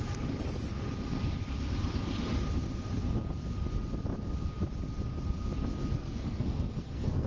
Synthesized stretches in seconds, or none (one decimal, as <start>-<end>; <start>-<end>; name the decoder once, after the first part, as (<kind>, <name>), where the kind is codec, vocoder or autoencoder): 6.0-7.3 (codec, SNAC)